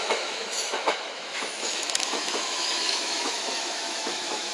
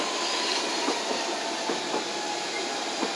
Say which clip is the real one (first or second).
second